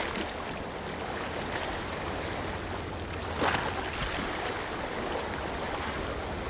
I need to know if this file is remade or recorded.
recorded